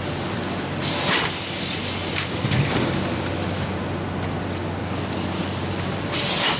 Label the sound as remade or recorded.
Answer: recorded